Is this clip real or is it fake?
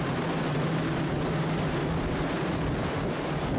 real